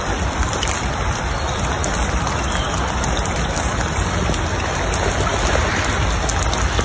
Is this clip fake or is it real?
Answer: real